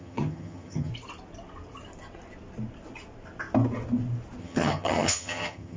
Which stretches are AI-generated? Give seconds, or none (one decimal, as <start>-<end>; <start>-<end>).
0.0-0.9; 4.4-5.8